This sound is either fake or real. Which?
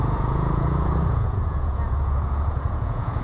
fake